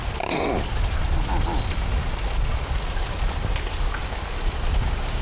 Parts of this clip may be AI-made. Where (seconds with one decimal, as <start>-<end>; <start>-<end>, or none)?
none